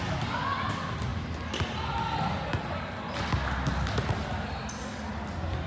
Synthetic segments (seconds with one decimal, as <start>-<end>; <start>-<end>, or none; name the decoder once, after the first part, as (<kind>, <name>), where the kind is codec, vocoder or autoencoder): none